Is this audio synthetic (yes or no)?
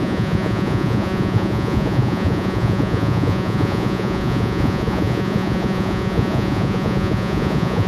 yes